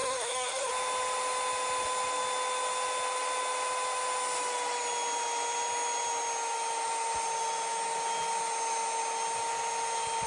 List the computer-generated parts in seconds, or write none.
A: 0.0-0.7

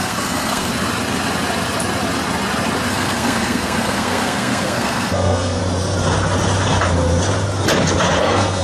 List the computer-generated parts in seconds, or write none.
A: 0.0-0.7; 2.9-5.6; 8.2-8.6

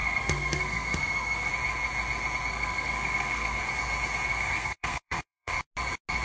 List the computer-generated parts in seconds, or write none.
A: 0.0-1.5; 2.5-3.6; 4.3-5.5